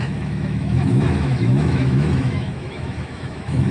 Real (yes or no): no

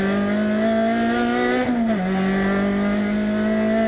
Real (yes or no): yes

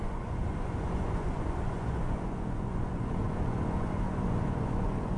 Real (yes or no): no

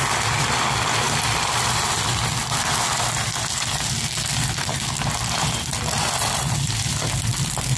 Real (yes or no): yes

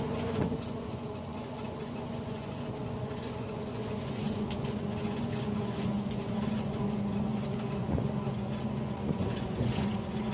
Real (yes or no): no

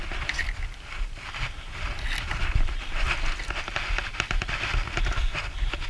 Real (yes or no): yes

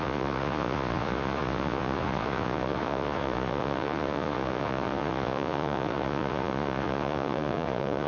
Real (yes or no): no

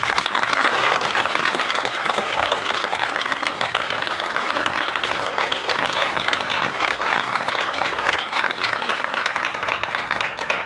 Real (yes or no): no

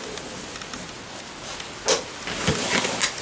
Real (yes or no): yes